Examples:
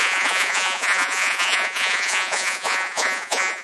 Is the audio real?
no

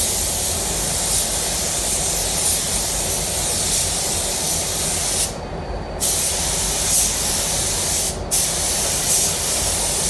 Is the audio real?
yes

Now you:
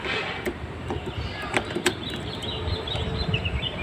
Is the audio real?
no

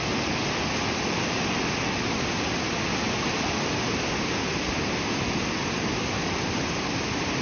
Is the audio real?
yes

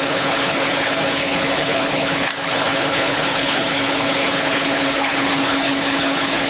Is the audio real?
no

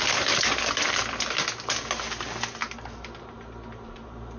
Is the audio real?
yes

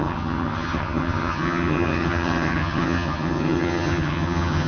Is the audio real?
no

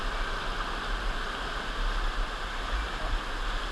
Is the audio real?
yes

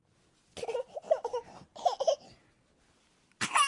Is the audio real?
yes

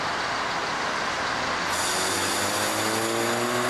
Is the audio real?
yes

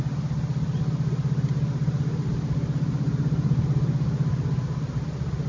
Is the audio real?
yes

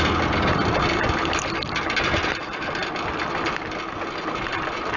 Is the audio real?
yes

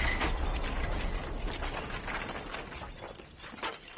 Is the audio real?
yes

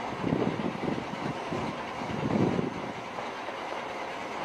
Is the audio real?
yes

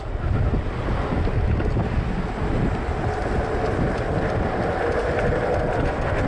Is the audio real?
yes